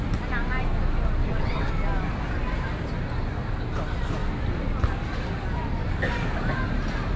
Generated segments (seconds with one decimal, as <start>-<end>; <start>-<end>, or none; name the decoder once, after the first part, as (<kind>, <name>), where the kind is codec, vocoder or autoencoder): 1.2-1.7 (vocoder, WaveNeXt)